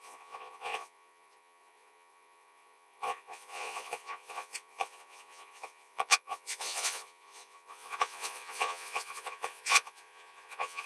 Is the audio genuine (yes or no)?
no